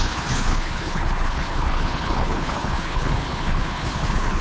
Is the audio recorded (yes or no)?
no